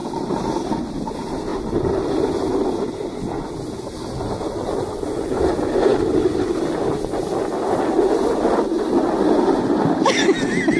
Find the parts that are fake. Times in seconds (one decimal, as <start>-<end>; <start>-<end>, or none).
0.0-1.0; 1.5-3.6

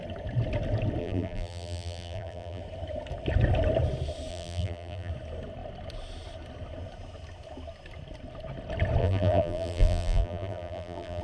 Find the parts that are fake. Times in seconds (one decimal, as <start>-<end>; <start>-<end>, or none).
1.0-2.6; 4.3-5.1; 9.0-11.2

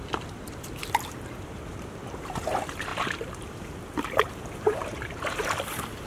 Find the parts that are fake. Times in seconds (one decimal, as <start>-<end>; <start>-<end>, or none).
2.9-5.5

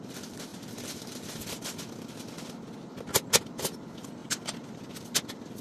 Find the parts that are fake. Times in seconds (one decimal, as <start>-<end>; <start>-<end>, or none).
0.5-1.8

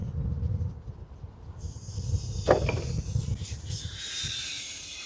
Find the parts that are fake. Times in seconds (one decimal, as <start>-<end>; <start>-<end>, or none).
3.1-5.1